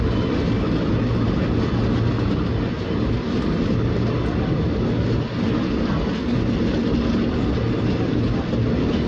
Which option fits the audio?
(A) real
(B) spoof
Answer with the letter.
A